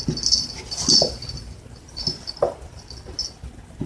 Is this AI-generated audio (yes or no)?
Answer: no